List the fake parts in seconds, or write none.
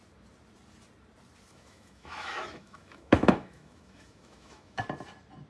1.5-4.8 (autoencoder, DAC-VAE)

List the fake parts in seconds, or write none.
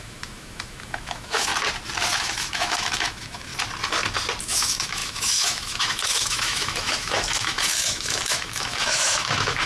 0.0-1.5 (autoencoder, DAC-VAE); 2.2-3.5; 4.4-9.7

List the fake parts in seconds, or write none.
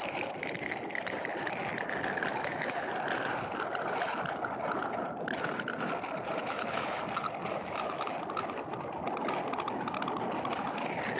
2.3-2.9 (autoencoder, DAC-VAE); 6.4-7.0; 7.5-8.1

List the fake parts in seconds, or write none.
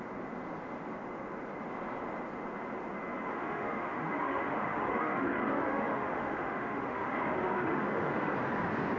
3.3-8.3 (autoencoder, DAC-VAE)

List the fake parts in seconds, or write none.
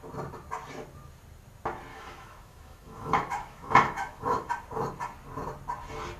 1.9-4.5 (autoencoder, DAC-VAE)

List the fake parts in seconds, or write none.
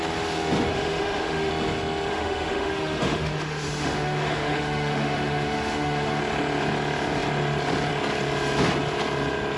0.7-1.5 (autoencoder, DAC-VAE); 2.1-6.2